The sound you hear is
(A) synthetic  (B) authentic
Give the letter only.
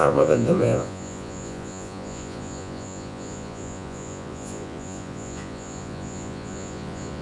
A